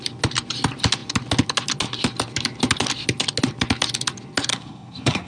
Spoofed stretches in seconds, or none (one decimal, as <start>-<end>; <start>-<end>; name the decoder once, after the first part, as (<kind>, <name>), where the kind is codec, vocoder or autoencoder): 4.5-5.3 (codec, SNAC)